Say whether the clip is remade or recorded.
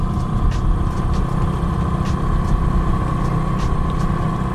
recorded